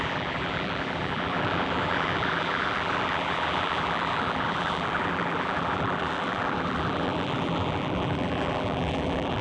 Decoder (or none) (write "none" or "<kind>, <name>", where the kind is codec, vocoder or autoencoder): vocoder, BigVGAN v2